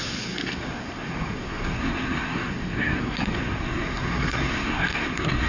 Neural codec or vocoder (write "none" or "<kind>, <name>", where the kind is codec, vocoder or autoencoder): codec, SNAC